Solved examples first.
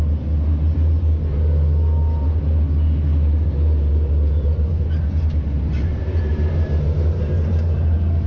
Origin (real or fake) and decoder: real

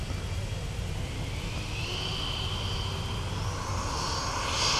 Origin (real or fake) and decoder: real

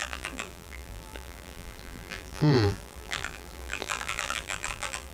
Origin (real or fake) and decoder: fake, vocoder, BigVGAN v2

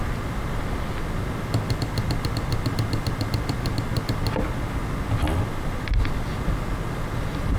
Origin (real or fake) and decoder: real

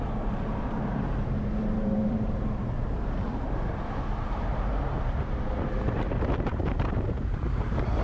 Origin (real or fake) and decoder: fake, vocoder, BigVGAN v2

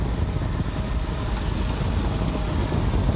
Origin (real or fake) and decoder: real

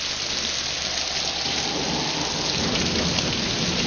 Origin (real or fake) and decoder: real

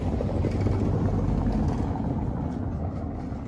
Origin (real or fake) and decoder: real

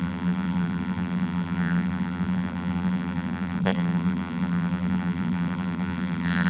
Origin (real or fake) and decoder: fake, vocoder, BigVGAN v2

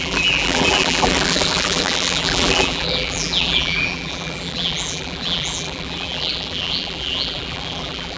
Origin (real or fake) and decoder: fake, vocoder, BigVGAN v2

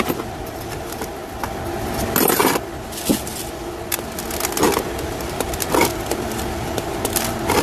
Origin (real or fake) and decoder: real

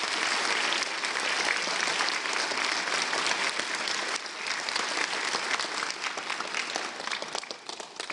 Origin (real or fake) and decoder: real